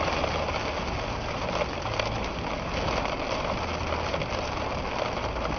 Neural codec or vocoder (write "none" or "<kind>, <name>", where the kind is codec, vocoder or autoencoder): none